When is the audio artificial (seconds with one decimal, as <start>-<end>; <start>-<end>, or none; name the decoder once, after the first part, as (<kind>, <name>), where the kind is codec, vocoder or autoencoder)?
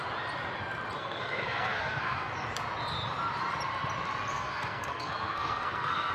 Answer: 1.0-2.3 (codec, SNAC); 4.3-6.1